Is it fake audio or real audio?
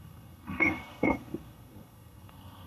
fake